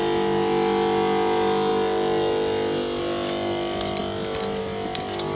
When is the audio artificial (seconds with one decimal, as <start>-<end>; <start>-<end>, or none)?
none